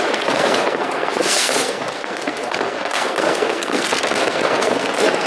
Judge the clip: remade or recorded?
remade